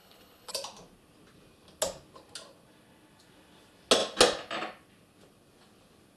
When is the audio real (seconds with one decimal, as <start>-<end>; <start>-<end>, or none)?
0.5-6.2